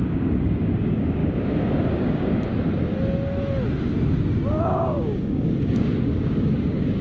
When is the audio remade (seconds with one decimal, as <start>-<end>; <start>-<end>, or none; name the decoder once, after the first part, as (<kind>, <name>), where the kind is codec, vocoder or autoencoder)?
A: 0.0-2.5 (codec, DAC); 4.5-7.0